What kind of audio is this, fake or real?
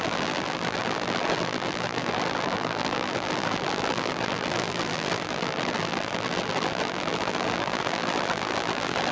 fake